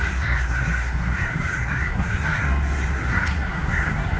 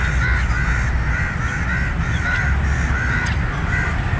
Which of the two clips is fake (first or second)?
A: first